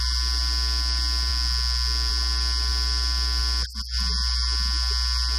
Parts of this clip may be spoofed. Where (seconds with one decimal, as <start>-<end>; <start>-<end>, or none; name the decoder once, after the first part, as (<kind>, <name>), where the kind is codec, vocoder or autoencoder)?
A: none